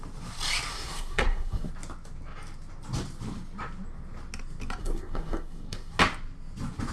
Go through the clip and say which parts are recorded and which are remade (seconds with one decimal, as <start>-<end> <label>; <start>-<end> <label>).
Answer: 0.0-0.7 recorded; 0.7-1.7 remade; 1.7-4.8 recorded; 4.8-6.0 remade; 6.0-6.9 recorded